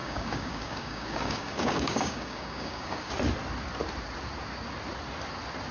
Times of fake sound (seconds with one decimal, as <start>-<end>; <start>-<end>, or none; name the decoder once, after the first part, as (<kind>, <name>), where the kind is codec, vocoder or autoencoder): 0.0-3.1 (codec, DAC)